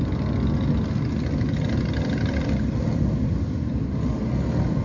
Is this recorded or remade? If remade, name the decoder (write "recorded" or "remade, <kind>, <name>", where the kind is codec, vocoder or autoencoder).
recorded